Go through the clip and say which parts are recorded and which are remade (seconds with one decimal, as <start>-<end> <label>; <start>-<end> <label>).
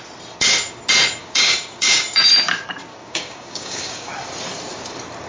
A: 0.0-1.2 recorded; 1.2-2.3 remade; 2.3-2.9 recorded; 2.9-4.1 remade; 4.1-5.3 recorded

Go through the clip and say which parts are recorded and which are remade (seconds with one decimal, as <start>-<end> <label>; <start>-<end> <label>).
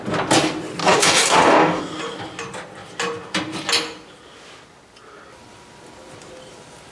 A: 0.0-0.8 recorded; 0.8-1.8 remade; 1.8-6.9 recorded